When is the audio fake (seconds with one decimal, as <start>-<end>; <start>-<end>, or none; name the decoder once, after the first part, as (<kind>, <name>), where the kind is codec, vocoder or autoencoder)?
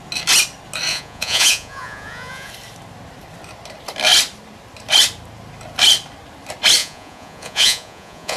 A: 0.9-2.5 (vocoder, Vocos); 6.8-8.4